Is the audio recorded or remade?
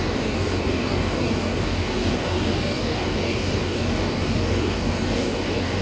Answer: remade